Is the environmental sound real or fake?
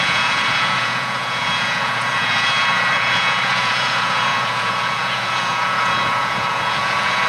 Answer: fake